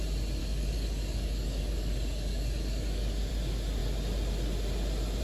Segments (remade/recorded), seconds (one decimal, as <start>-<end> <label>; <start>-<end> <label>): 0.0-0.4 recorded; 0.4-3.3 remade; 3.3-5.2 recorded